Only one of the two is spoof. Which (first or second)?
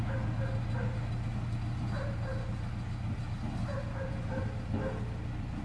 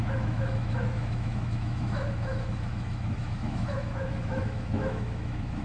second